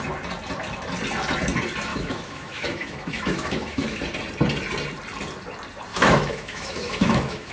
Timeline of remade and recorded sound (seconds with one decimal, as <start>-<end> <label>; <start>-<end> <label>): 0.0-1.9 recorded; 1.9-4.0 remade; 4.0-5.9 recorded; 5.9-7.5 remade